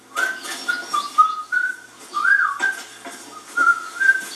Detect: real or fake real